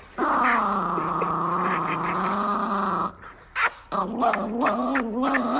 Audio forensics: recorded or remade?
recorded